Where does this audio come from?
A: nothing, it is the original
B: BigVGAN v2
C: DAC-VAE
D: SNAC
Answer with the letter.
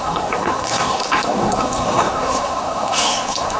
D